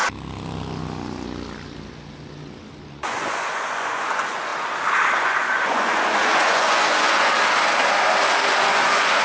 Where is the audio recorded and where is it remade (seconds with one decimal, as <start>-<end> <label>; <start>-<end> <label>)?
0.0-2.9 recorded; 2.9-4.5 remade; 4.5-5.1 recorded; 5.1-7.3 remade; 7.3-8.5 recorded; 8.5-9.2 remade